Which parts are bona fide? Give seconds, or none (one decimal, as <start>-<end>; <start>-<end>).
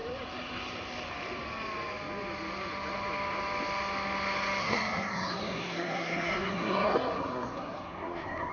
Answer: 0.0-4.6